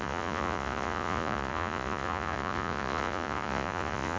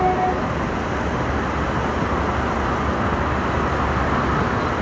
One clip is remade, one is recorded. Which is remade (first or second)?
first